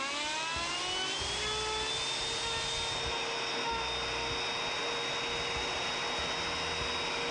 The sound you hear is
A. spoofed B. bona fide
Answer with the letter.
B